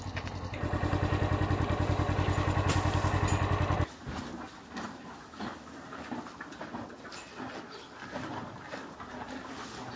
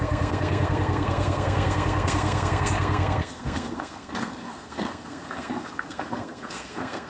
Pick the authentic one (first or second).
first